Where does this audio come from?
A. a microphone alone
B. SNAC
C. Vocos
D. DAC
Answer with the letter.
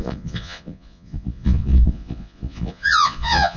C